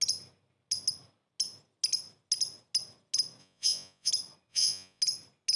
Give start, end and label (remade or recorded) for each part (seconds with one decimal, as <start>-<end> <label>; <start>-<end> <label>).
0.0-3.4 recorded; 3.4-4.1 remade; 4.1-4.5 recorded; 4.5-5.0 remade; 5.0-5.6 recorded